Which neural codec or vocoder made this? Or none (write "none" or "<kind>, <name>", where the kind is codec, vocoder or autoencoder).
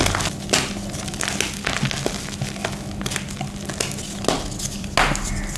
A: none